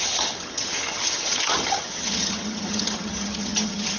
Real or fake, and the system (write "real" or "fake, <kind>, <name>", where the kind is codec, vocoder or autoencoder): fake, vocoder, HiFi-GAN